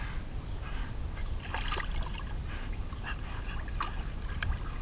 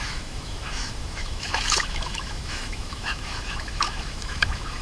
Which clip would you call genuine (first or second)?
first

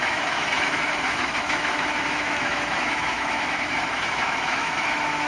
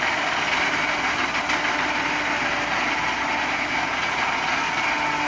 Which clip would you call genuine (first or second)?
second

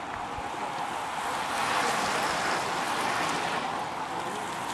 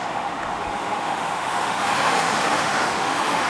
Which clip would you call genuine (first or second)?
first